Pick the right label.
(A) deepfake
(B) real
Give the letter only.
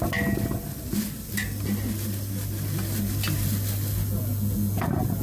B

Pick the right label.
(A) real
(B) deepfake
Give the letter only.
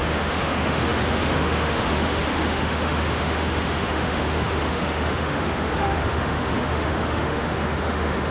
B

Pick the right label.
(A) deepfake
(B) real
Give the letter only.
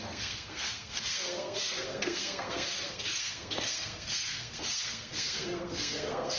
A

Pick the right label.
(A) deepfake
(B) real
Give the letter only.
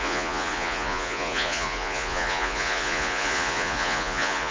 A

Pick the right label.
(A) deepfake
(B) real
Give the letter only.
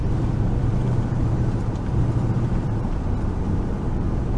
A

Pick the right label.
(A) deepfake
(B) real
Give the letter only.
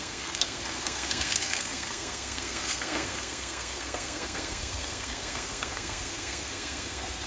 A